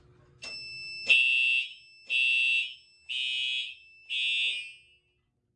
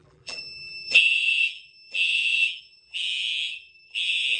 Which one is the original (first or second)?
first